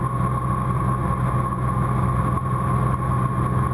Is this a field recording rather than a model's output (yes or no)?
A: yes